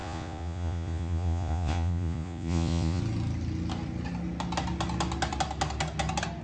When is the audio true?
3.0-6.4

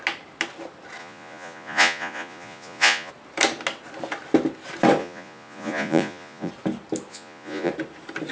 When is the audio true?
0.0-1.0; 3.1-5.0; 6.5-7.1; 7.7-8.3